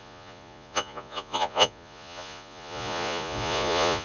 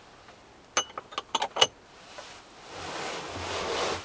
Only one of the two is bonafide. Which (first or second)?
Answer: second